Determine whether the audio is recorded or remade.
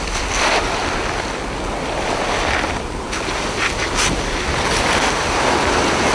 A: recorded